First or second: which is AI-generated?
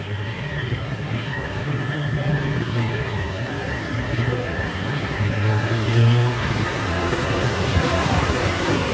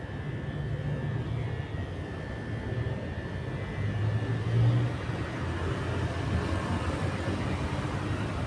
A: first